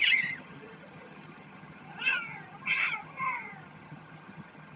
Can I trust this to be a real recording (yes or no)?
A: no